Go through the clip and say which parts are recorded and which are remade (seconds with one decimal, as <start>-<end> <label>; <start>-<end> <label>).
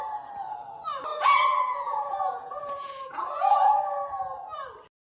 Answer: 0.0-1.1 recorded; 1.1-3.7 remade; 3.7-5.2 recorded